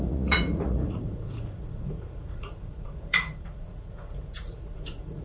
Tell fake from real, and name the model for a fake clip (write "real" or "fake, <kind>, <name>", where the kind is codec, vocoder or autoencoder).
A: fake, vocoder, Vocos